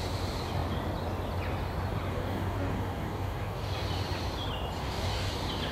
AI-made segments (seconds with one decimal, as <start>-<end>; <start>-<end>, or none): 2.1-3.7; 4.8-5.3